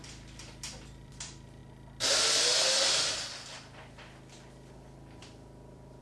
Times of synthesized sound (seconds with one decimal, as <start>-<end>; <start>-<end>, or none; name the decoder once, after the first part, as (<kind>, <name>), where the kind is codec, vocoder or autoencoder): 0.0-1.6 (vocoder, BigVGAN v2); 5.2-6.0